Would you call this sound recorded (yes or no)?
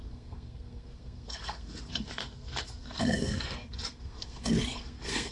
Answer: no